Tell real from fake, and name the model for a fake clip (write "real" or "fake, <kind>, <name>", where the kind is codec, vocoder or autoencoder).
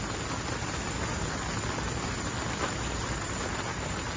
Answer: real